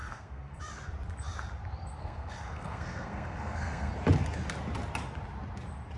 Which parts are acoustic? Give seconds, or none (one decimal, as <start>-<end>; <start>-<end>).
0.6-2.0; 3.9-6.0

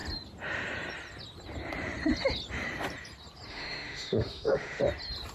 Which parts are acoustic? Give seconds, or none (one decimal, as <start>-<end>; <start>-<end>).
0.0-3.5; 4.8-5.3

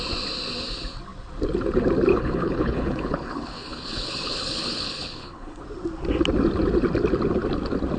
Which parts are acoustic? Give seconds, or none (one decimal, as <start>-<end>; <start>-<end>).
0.0-2.1; 5.6-8.0

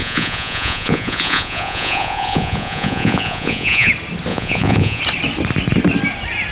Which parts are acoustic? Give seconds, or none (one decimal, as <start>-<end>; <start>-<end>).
3.9-4.3; 5.0-6.5

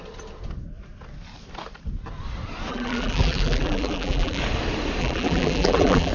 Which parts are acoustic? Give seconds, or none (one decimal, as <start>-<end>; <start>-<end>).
0.0-2.7; 4.4-5.0

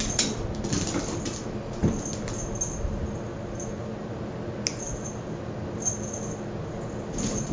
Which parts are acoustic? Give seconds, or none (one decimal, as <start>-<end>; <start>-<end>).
0.0-7.5